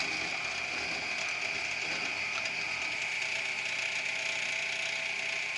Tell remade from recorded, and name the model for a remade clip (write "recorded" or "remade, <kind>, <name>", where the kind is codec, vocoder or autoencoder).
recorded